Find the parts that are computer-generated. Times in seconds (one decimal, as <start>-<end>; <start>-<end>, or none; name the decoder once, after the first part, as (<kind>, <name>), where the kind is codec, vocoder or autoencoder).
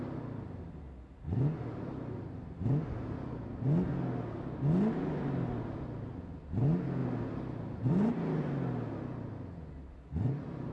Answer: none